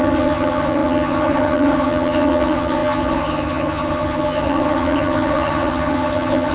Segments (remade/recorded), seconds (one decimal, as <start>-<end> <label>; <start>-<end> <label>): 0.0-6.5 remade